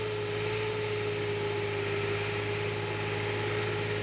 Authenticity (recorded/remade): recorded